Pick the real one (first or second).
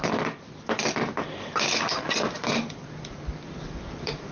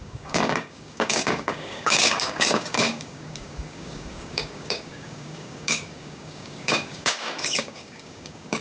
first